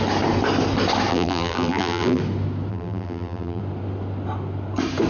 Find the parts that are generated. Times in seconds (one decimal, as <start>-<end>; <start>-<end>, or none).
1.1-2.2; 2.7-3.6